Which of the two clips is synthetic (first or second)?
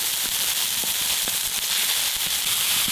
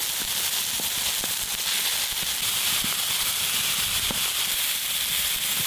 first